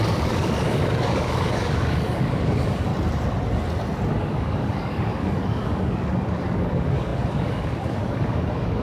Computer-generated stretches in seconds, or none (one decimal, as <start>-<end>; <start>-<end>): 0.0-2.9; 4.2-8.8